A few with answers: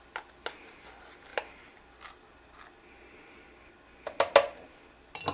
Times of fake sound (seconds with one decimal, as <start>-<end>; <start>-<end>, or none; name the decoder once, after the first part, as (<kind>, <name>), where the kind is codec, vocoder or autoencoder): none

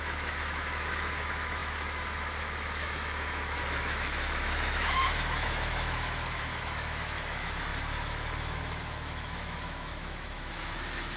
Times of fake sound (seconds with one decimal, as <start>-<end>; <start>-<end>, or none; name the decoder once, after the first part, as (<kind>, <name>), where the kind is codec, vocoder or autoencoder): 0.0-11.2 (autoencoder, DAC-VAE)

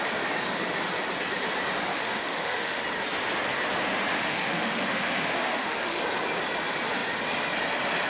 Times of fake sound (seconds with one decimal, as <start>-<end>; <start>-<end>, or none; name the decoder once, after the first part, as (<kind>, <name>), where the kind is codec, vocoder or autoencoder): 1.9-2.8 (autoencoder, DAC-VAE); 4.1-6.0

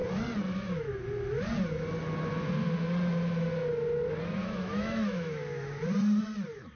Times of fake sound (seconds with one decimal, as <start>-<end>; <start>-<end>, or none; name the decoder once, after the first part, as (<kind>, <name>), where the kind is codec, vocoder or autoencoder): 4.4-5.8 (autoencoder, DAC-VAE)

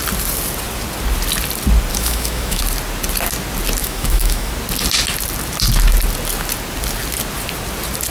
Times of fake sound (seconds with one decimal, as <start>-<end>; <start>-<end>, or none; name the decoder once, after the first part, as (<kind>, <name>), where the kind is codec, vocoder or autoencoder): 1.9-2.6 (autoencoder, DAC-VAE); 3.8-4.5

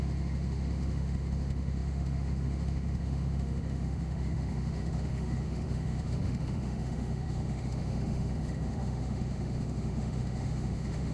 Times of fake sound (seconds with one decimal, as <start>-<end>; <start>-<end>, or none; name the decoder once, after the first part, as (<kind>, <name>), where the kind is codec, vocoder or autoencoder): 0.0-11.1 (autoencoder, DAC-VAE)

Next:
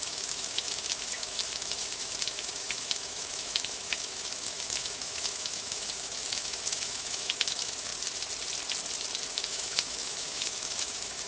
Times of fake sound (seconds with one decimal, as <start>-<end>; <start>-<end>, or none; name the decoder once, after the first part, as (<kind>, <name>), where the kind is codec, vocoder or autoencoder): 0.0-7.9 (autoencoder, DAC-VAE); 9.3-11.3

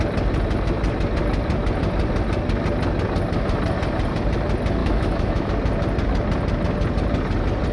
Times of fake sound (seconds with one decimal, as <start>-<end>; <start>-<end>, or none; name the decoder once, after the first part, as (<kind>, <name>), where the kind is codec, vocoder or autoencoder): 4.8-5.5 (autoencoder, DAC-VAE)